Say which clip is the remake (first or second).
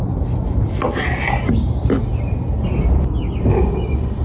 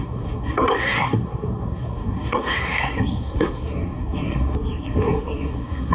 second